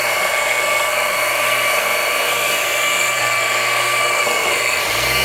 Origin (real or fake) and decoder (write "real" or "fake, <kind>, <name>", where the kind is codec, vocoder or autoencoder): fake, codec, SNAC